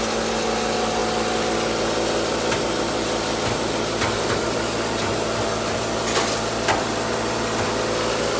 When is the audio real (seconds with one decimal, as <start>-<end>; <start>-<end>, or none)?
0.0-8.4